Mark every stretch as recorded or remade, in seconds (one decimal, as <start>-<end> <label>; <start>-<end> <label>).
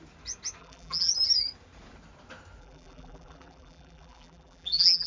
0.0-0.6 recorded; 0.6-1.1 remade; 1.1-2.6 recorded; 2.6-5.1 remade